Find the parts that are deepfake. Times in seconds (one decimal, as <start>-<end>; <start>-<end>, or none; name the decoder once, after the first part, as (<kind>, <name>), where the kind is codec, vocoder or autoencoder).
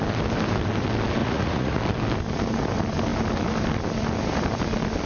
1.2-1.8 (vocoder, Vocos)